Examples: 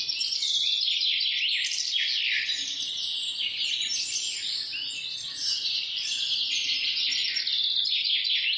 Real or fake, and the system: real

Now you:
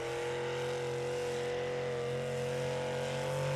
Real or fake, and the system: real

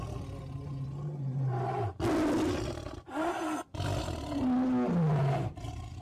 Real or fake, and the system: real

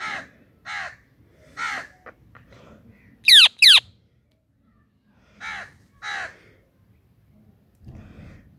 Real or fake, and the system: real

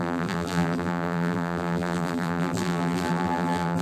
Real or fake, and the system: fake, vocoder, BigVGAN v2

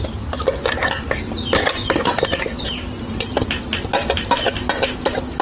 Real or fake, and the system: real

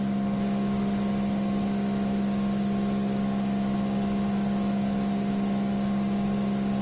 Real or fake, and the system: real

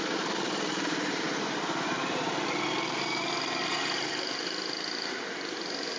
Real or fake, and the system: real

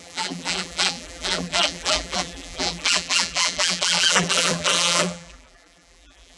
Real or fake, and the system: fake, vocoder, BigVGAN v2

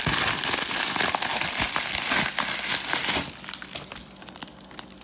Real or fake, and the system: real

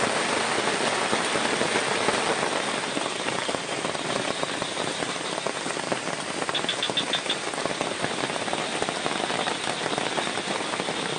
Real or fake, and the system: real